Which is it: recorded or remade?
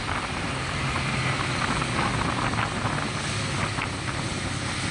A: recorded